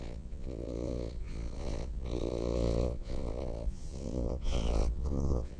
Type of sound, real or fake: fake